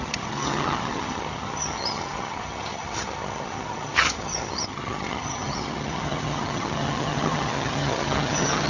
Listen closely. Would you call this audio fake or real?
fake